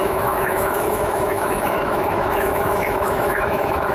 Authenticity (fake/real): fake